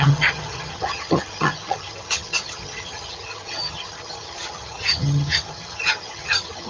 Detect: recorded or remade remade